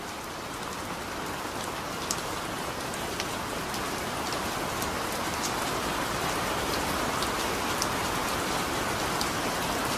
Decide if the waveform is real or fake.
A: real